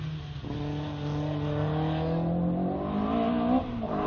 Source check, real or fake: real